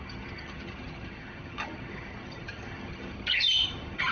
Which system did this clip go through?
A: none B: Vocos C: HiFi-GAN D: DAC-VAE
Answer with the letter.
C